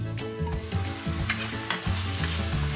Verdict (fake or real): real